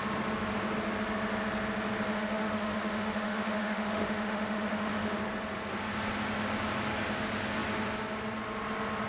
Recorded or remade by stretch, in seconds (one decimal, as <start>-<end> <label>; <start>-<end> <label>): 0.0-2.1 recorded; 2.1-5.2 remade; 5.2-9.1 recorded